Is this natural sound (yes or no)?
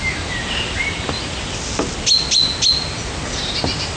yes